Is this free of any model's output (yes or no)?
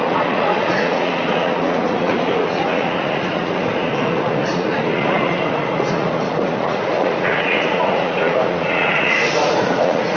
no